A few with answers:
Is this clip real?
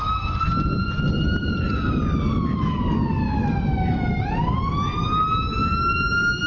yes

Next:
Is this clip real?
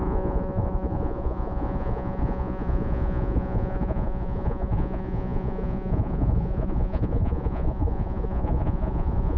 no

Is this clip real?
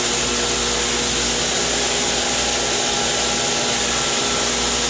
yes